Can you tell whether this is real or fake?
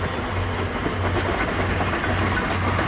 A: real